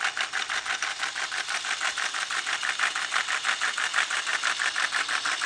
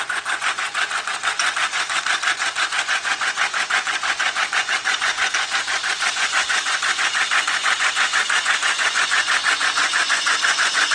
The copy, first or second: second